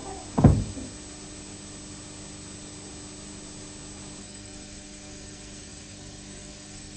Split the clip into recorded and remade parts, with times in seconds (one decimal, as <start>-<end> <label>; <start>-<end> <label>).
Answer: 0.0-4.2 recorded; 4.2-7.0 remade